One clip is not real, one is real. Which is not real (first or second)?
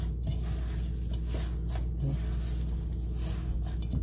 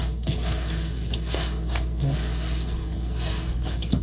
second